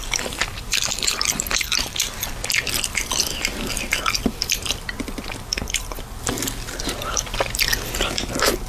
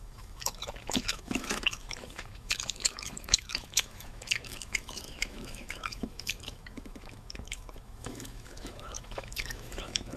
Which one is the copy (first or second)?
second